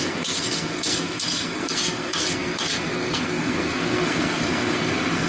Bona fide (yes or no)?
no